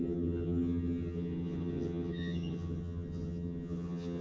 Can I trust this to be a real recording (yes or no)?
no